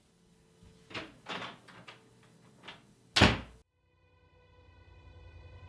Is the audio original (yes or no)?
yes